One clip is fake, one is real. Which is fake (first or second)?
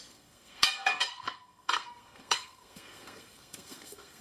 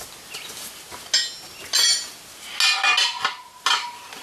first